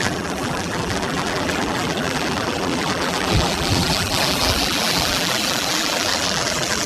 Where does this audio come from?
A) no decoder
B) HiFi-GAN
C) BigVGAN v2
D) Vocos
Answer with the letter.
C